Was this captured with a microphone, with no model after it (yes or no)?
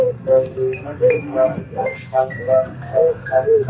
no